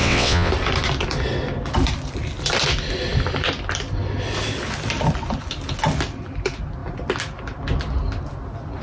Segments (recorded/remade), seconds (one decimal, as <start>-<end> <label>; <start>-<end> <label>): 0.0-0.5 remade; 0.5-8.8 recorded